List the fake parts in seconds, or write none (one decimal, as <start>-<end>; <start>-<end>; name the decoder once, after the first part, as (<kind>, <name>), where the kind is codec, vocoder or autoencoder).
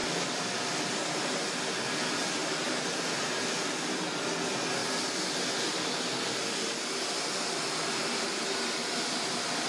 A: 0.0-0.9 (vocoder, BigVGAN v2); 2.4-3.0; 4.8-8.2